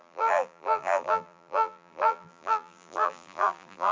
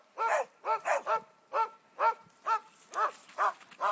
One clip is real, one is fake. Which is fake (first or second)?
first